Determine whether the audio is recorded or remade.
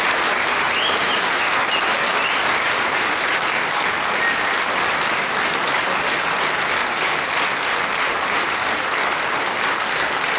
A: recorded